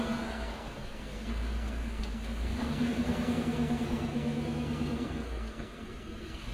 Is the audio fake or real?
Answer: fake